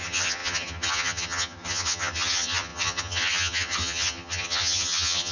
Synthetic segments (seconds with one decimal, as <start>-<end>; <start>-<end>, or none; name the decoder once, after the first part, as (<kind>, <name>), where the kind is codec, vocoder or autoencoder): 0.0-5.3 (vocoder, HiFi-GAN)